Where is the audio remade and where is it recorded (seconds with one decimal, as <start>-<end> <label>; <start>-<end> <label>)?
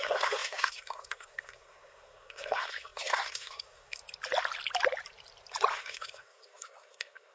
0.0-4.0 remade; 4.0-5.7 recorded; 5.7-7.3 remade